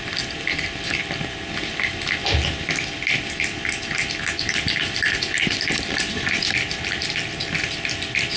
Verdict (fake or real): fake